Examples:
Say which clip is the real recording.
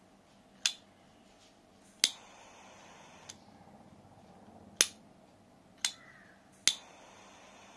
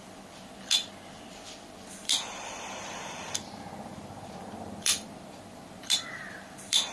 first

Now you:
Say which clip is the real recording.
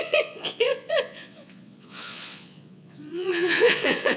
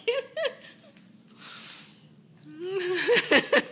second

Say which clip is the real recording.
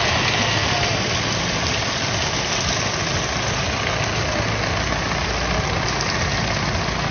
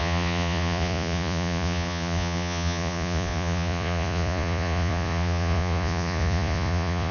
first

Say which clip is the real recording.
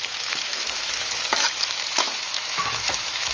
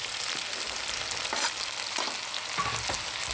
second